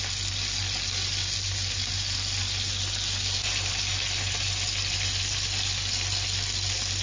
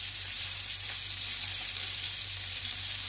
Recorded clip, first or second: first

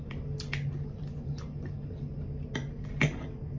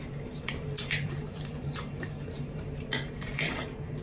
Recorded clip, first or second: first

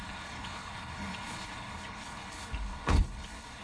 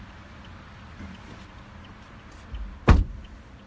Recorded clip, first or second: second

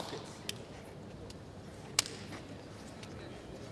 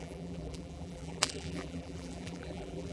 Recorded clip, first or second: first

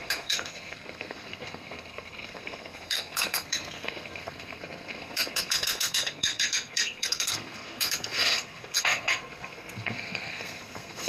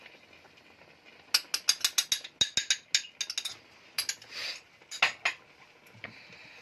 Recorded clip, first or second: second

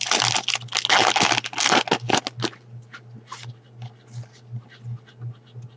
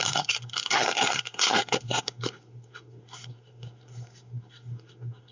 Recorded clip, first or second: first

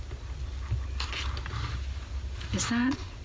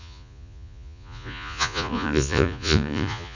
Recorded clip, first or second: first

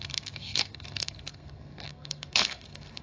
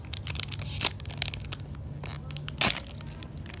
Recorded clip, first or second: second